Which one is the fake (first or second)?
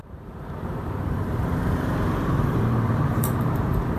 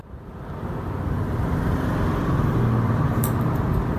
first